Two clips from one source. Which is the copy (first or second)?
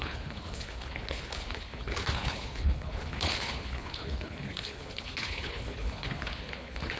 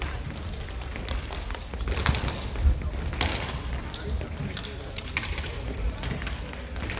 first